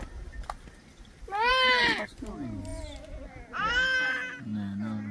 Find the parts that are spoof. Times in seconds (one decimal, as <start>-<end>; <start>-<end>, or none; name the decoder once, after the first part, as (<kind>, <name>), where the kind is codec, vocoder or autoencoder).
none